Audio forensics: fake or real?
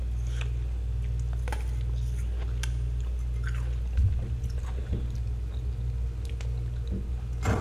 real